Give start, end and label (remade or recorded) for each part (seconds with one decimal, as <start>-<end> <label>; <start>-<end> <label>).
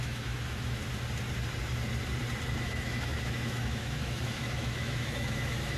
0.0-0.8 remade; 0.8-2.6 recorded; 2.6-5.8 remade